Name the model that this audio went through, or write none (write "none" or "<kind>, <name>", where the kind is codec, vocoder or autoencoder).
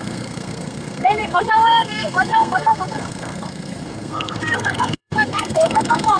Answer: codec, SNAC